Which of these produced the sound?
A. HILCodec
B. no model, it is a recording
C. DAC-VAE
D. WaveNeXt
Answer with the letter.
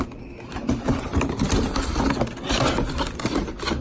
B